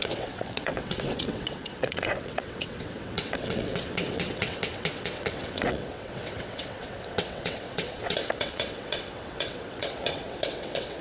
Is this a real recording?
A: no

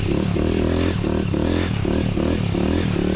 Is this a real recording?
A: yes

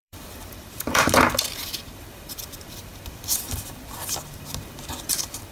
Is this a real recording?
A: no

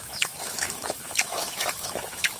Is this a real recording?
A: no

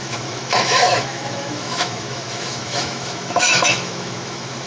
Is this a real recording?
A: no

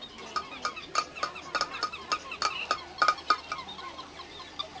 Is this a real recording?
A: yes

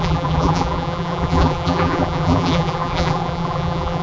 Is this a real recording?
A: no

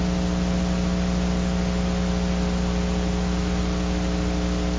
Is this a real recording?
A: yes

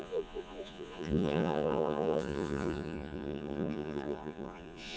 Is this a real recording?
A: no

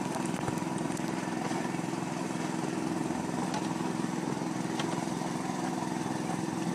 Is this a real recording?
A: no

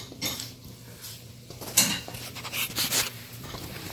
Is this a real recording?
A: no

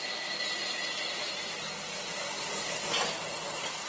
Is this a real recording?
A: yes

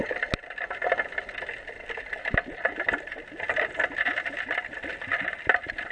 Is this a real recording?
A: yes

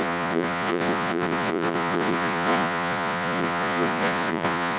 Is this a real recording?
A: no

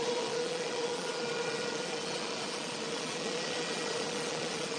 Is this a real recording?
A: no